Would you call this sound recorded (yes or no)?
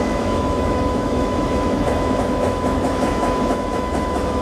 no